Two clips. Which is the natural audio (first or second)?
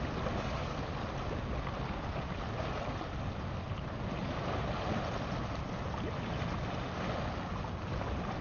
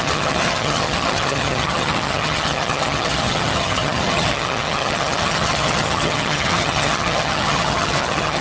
first